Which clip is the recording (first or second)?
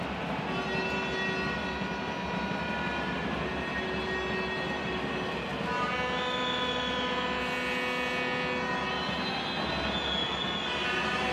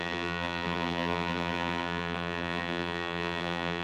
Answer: first